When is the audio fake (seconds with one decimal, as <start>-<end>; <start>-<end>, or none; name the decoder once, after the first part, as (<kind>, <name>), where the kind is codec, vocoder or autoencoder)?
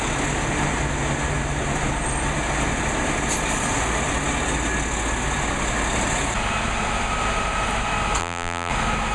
8.2-8.7 (vocoder, BigVGAN v2)